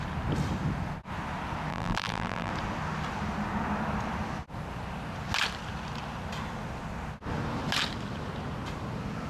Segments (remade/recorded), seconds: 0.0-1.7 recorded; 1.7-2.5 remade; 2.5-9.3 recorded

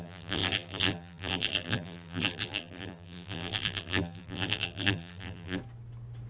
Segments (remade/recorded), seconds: 0.0-5.6 remade; 5.6-6.3 recorded

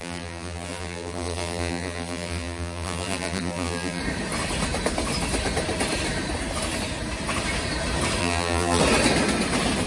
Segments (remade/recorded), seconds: 0.0-4.0 remade; 4.0-8.2 recorded; 8.2-8.8 remade; 8.8-9.9 recorded

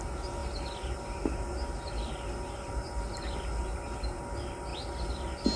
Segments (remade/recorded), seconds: 0.0-5.6 recorded

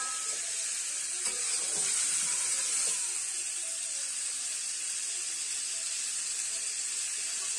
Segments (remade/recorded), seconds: 0.0-7.6 recorded